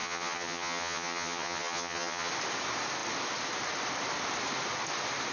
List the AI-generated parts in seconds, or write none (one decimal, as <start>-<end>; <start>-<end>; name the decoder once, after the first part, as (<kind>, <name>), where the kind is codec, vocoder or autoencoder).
0.0-2.3 (vocoder, HiFi-GAN)